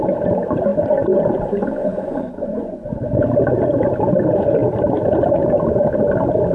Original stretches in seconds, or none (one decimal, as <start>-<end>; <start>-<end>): 0.0-1.8; 3.0-6.5

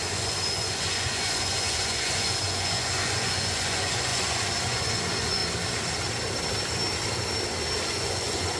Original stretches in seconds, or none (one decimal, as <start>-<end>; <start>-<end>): 5.4-7.8